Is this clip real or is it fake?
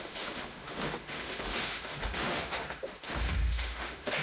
fake